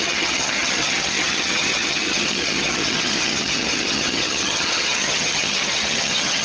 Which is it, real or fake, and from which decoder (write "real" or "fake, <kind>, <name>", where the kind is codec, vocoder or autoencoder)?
fake, vocoder, HiFi-GAN